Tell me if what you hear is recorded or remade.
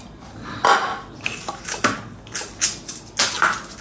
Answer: recorded